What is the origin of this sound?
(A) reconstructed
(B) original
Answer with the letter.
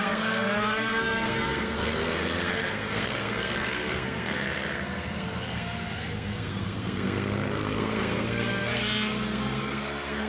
A